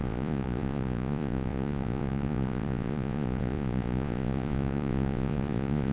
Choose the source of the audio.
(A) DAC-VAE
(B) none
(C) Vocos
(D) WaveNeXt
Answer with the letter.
C